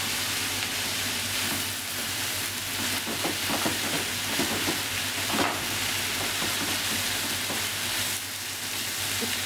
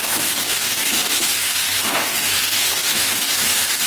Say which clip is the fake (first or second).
second